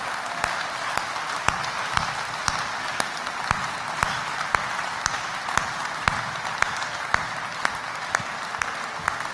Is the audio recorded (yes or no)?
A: yes